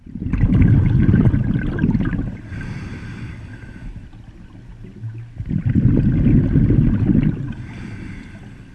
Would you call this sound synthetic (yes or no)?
no